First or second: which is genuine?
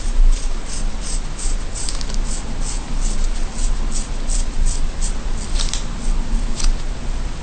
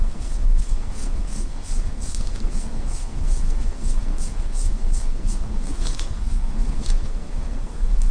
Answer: first